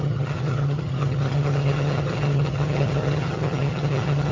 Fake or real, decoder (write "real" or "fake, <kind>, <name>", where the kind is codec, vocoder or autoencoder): fake, vocoder, HiFi-GAN